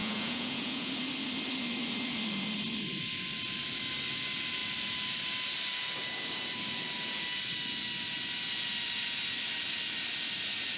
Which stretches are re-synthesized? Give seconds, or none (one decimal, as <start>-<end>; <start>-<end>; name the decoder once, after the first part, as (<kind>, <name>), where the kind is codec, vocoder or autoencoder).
0.0-0.9 (vocoder, Vocos)